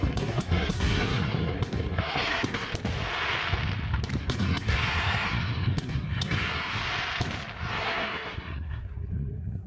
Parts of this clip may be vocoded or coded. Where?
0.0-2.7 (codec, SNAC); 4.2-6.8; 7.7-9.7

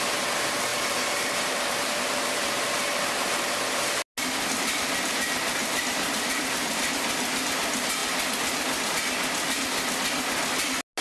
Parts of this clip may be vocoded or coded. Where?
0.7-3.5 (vocoder, BigVGAN v2); 5.6-6.8

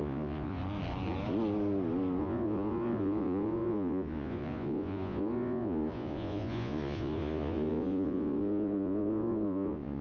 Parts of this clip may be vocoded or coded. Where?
0.0-0.6 (vocoder, Vocos); 2.2-10.0

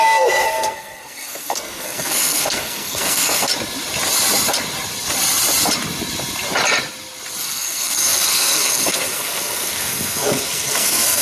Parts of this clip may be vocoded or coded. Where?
0.0-3.5 (codec, SNAC); 7.4-11.2